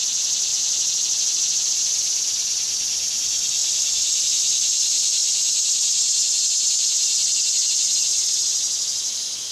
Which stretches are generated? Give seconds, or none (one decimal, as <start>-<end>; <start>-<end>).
3.6-4.2